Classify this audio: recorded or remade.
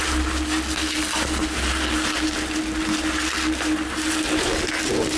recorded